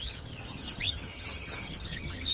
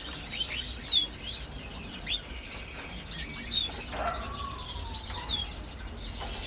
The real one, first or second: second